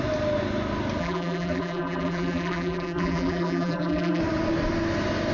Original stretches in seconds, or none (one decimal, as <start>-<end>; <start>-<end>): 0.0-1.0; 4.2-5.3